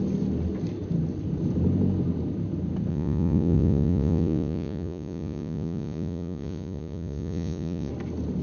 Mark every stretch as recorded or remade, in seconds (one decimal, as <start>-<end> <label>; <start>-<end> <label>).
0.0-2.9 recorded; 2.9-7.9 remade; 7.9-8.4 recorded